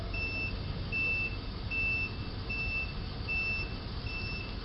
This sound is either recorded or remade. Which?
recorded